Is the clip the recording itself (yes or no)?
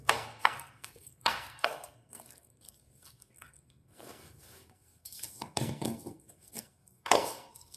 no